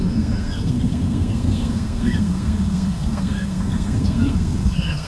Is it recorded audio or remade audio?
remade